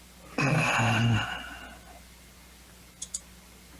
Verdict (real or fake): real